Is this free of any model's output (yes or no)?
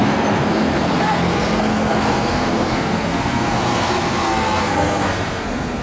no